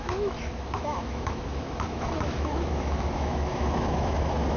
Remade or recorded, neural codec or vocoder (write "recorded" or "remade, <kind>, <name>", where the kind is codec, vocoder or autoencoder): remade, autoencoder, DAC-VAE